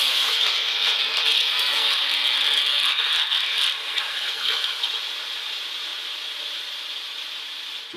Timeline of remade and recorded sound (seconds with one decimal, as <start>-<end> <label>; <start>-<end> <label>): 0.0-4.8 remade; 4.8-8.0 recorded

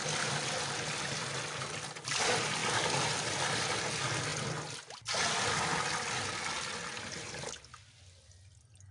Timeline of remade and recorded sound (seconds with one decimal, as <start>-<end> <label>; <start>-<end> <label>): 0.0-8.9 recorded

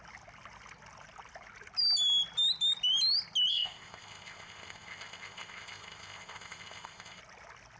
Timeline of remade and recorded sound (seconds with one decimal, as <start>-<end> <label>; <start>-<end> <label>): 0.0-3.5 recorded; 3.5-7.2 remade; 7.2-7.8 recorded

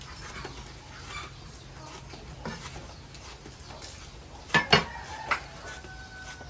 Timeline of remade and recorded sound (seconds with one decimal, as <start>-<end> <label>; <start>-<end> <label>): 0.0-6.5 recorded

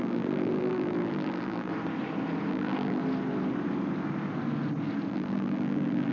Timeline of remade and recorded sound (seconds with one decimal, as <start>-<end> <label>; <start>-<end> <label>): 0.0-1.7 remade; 1.7-2.5 recorded; 2.5-3.0 remade; 3.0-5.1 recorded; 5.1-6.1 remade